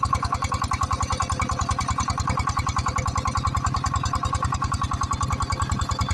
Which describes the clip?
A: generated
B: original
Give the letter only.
B